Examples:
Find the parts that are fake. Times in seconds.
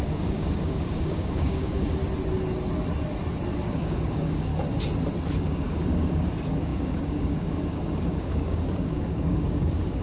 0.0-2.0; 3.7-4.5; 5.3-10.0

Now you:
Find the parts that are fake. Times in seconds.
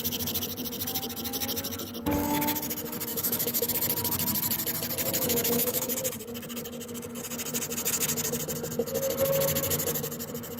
3.1-3.7; 5.2-5.9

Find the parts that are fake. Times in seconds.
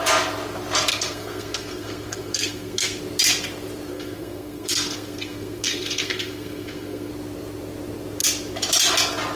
0.9-3.0; 3.9-7.1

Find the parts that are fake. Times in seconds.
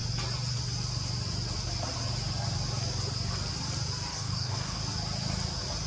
4.1-4.8